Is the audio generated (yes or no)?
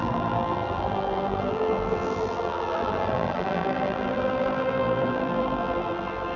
yes